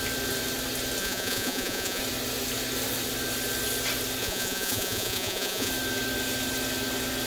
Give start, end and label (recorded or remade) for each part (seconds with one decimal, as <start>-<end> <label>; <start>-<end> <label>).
0.0-1.0 recorded; 1.0-2.0 remade; 2.0-4.2 recorded; 4.2-5.7 remade; 5.7-7.3 recorded